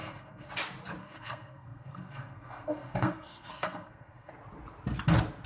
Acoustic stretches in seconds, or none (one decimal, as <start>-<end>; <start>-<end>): 0.5-1.0; 4.3-5.5

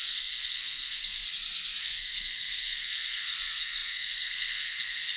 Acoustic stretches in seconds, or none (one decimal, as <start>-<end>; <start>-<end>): 1.2-1.8

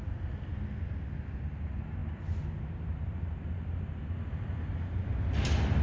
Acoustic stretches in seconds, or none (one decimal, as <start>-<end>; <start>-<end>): 0.0-5.8

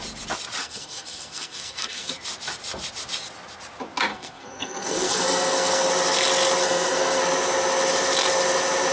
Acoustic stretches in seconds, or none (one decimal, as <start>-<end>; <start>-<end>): 0.0-0.6; 2.1-4.1; 5.9-6.6; 7.2-8.9

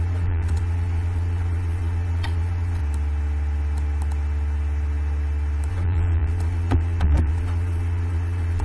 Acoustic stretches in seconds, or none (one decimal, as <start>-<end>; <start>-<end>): 2.8-5.7

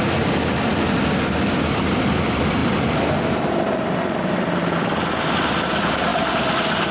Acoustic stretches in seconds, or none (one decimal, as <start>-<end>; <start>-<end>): 0.0-6.9